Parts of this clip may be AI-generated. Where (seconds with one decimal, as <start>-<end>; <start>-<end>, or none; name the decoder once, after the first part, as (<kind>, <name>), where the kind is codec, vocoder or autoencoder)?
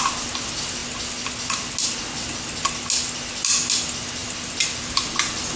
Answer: none